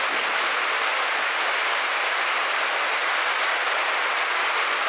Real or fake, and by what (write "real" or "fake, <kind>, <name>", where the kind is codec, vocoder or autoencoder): real